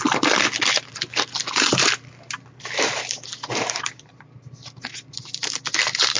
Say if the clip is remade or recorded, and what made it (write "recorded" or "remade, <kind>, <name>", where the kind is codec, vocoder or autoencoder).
recorded